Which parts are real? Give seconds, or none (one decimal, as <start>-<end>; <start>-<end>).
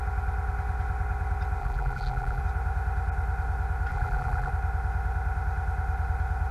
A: 0.0-1.6; 2.4-3.9; 4.5-6.5